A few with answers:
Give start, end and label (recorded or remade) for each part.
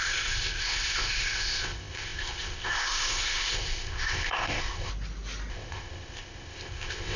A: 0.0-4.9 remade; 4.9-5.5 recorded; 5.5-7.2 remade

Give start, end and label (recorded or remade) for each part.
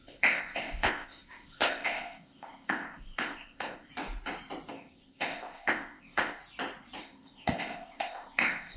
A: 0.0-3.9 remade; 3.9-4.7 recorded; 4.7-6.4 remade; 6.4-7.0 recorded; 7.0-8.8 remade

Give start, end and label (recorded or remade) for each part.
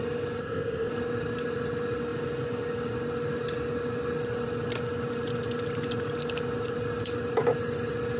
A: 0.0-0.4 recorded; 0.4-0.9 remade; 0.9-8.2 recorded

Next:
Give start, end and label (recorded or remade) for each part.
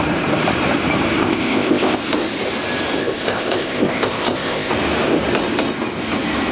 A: 0.0-1.2 recorded; 1.2-2.0 remade; 2.0-3.0 recorded; 3.0-4.7 remade; 4.7-6.5 recorded